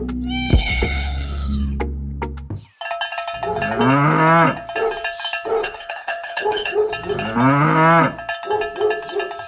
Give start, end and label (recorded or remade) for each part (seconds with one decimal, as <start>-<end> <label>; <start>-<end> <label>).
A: 0.0-0.5 recorded; 0.5-1.8 remade; 1.8-5.6 recorded; 5.6-6.9 remade; 6.9-9.5 recorded